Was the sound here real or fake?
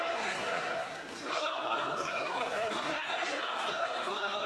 fake